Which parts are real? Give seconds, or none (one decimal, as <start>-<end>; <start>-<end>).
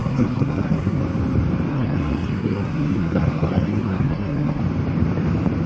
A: 1.0-1.7; 4.6-5.7